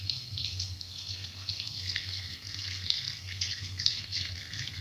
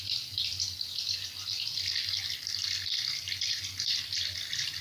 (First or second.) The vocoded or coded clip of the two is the first